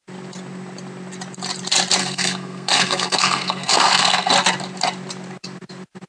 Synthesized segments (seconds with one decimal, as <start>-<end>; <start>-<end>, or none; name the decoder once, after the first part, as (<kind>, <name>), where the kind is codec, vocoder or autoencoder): 2.0-4.3 (codec, SNAC)